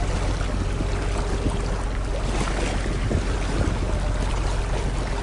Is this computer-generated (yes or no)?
no